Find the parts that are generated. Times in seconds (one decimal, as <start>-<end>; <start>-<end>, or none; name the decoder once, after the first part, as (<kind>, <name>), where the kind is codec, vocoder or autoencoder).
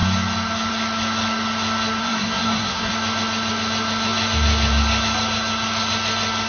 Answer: 2.0-2.9 (codec, SNAC)